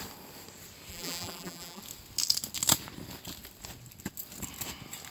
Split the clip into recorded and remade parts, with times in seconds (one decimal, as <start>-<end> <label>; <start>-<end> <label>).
0.0-0.9 recorded; 0.9-1.8 remade; 1.8-5.1 recorded